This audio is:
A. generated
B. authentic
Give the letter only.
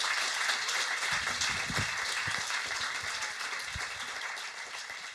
B